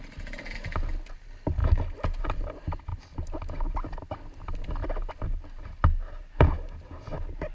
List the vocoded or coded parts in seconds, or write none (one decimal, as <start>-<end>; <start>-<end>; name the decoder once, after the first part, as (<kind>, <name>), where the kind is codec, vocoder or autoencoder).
none